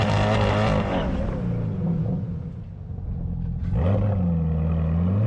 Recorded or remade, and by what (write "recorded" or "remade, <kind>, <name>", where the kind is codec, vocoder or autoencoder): recorded